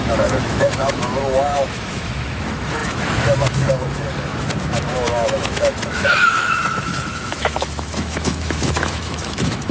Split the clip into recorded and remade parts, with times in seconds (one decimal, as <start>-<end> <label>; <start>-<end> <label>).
0.0-4.3 remade; 4.3-4.9 recorded; 4.9-9.7 remade